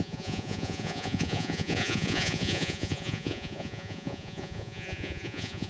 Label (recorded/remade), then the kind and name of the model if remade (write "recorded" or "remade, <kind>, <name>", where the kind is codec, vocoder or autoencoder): remade, vocoder, Vocos